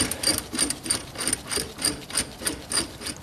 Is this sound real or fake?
real